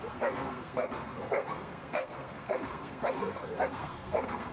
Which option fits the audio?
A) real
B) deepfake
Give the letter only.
B